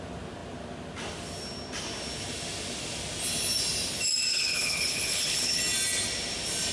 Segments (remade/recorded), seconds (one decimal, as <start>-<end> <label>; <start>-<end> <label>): 0.0-4.3 recorded; 4.3-5.6 remade; 5.6-6.7 recorded